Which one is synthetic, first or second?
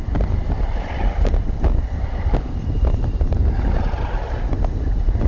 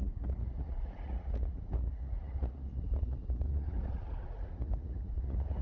second